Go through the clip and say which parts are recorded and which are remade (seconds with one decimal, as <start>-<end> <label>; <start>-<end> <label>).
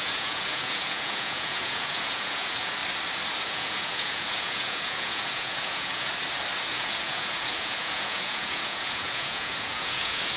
0.0-2.8 remade; 2.8-3.4 recorded; 3.4-6.1 remade; 6.1-6.7 recorded; 6.7-10.4 remade